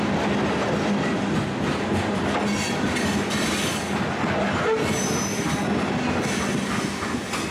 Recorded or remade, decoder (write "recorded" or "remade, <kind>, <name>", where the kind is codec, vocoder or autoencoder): recorded